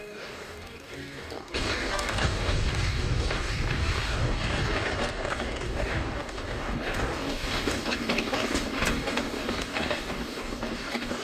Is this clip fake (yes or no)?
yes